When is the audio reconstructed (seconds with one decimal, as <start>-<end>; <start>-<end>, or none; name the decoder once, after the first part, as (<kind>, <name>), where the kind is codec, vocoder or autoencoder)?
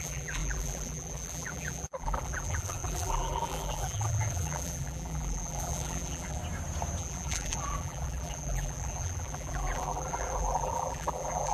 0.0-6.4 (vocoder, BigVGAN v2); 7.0-11.5